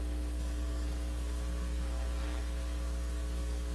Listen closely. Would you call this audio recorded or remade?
remade